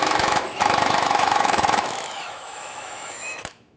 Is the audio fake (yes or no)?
yes